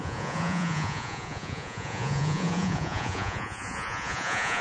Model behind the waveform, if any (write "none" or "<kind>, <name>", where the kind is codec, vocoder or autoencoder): vocoder, Vocos